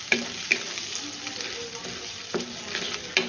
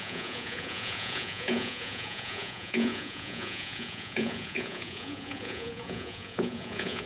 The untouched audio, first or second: first